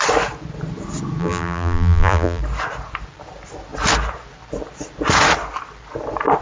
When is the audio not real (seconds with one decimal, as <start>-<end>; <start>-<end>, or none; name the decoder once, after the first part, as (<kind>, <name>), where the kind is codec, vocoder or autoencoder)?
1.2-2.4 (vocoder, BigVGAN v2)